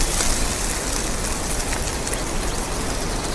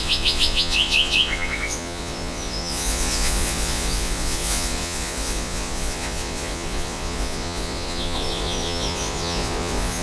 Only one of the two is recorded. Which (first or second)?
first